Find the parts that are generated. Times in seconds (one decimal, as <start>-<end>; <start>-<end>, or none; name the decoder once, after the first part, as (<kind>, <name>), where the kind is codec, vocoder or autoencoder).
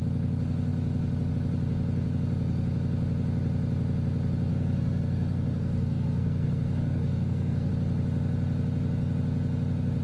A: 4.5-7.7 (codec, SNAC)